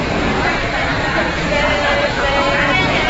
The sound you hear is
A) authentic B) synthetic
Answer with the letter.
B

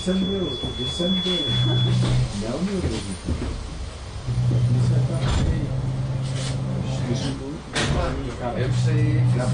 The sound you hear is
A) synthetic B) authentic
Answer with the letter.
B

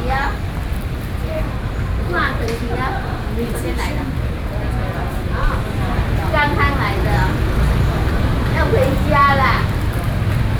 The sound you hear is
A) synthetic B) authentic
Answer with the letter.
B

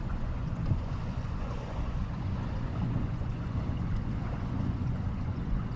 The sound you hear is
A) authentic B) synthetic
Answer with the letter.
B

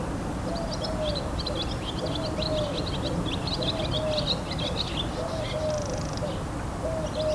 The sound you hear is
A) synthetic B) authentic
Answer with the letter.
B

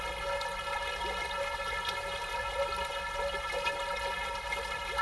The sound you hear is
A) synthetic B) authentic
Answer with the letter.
B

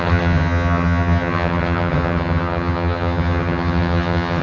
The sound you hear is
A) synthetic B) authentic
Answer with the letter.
A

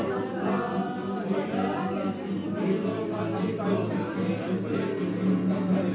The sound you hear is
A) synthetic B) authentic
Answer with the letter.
B